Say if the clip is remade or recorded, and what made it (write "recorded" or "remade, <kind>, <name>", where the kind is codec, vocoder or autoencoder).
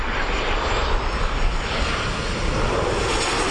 recorded